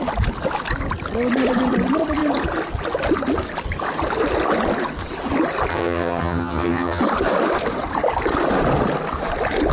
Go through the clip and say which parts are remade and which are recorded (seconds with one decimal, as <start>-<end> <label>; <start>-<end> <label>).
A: 0.0-5.7 recorded; 5.7-7.0 remade; 7.0-9.7 recorded